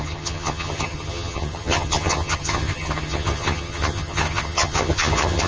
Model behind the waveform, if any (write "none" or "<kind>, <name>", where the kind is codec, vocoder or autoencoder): vocoder, HiFi-GAN